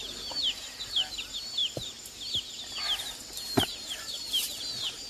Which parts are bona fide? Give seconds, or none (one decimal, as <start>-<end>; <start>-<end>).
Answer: 0.0-5.1